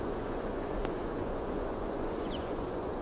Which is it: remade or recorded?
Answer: remade